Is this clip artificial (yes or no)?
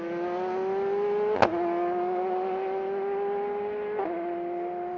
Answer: no